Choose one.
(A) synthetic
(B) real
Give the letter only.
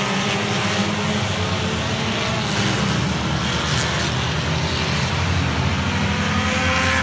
B